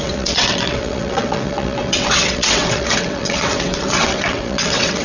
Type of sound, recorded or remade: remade